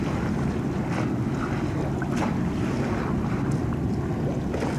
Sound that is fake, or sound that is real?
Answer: real